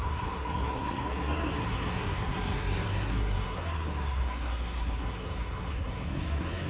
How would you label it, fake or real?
fake